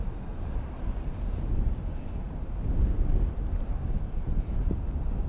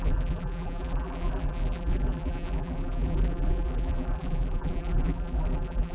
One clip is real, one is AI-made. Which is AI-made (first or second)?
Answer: second